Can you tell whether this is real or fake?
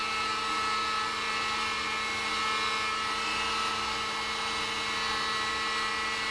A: real